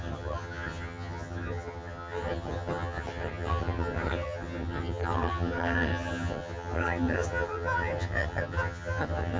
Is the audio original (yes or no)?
no